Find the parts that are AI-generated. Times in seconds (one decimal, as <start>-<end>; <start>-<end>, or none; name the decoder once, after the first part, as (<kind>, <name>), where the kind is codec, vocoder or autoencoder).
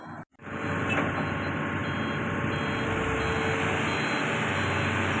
none